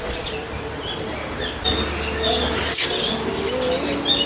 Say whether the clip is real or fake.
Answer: real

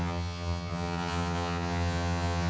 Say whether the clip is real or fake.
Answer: fake